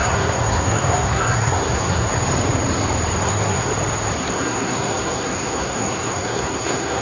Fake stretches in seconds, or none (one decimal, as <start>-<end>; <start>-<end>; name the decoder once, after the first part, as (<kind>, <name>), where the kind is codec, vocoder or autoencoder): 0.0-2.1 (codec, SNAC); 3.2-3.7; 4.3-7.0

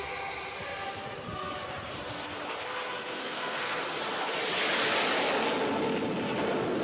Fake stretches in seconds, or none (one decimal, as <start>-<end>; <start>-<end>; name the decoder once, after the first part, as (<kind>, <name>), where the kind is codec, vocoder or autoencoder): 3.2-3.8 (codec, SNAC)